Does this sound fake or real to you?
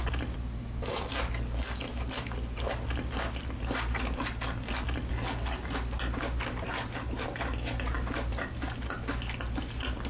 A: real